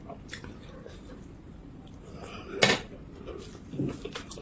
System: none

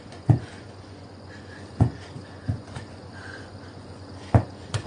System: vocoder, Vocos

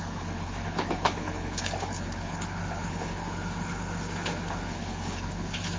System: codec, HILCodec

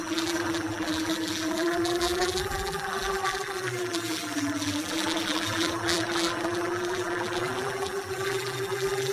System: vocoder, BigVGAN v2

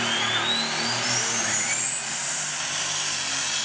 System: none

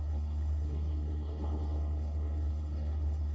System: codec, SNAC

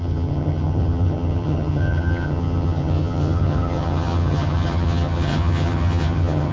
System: vocoder, HiFi-GAN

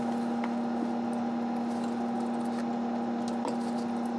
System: none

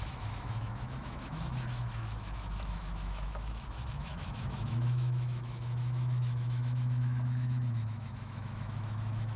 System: autoencoder, DAC-VAE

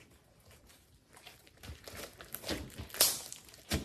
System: none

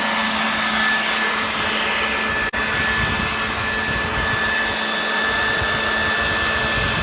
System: none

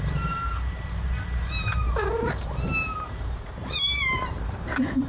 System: vocoder, BigVGAN v2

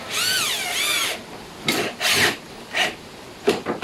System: none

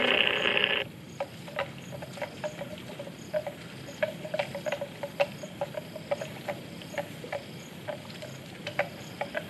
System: none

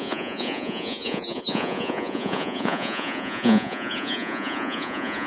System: vocoder, Vocos